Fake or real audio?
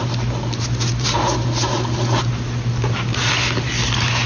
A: real